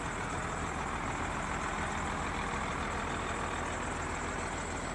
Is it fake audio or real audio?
real